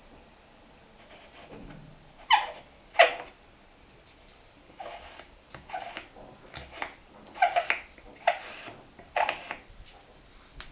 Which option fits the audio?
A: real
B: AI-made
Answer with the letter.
A